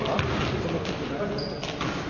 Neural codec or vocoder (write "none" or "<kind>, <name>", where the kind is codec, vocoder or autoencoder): none